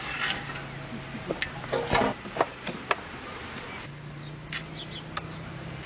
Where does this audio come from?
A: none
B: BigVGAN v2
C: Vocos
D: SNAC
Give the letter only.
A